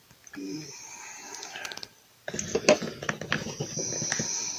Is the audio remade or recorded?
recorded